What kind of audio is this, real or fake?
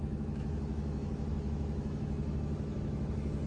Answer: fake